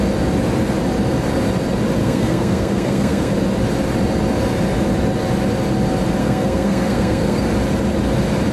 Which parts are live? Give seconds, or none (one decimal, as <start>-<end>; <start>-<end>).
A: 0.0-2.0; 3.3-6.2; 7.4-8.5